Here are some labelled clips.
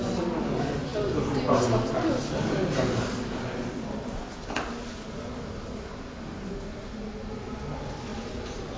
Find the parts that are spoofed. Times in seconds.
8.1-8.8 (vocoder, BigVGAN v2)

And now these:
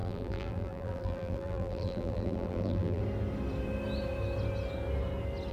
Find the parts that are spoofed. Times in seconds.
0.0-3.0 (vocoder, BigVGAN v2)

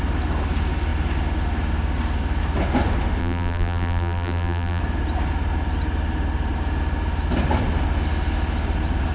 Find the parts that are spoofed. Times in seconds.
3.2-4.8 (vocoder, BigVGAN v2)

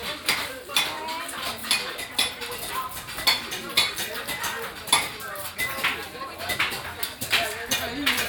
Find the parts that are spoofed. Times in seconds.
0.0-1.0 (vocoder, BigVGAN v2); 6.0-6.5